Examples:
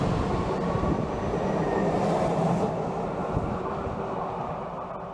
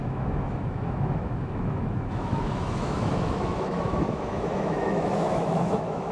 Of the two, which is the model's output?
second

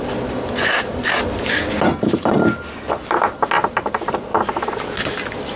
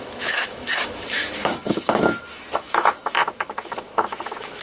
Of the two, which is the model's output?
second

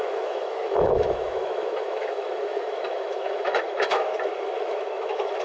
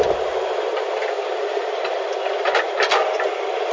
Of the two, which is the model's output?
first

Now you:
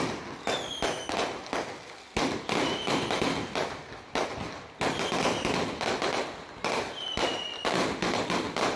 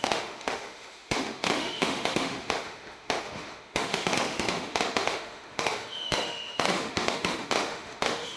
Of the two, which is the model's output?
second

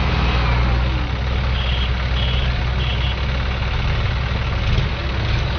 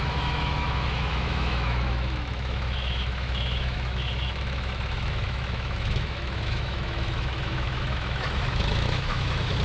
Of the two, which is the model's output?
second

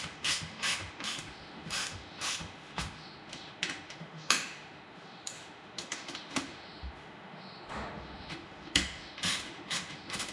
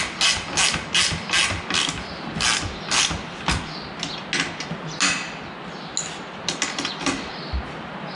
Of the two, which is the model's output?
first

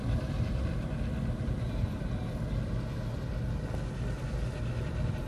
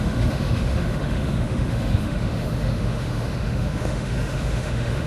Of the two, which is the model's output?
second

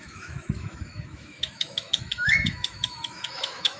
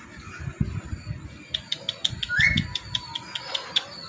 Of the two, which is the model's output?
first